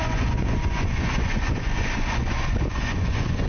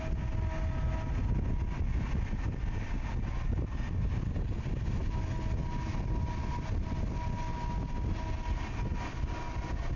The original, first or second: second